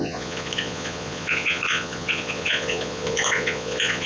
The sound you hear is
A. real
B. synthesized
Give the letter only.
B